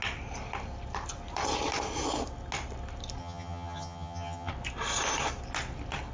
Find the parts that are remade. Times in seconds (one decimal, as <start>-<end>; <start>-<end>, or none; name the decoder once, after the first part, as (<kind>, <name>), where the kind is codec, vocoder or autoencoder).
3.2-4.5 (vocoder, HiFi-GAN)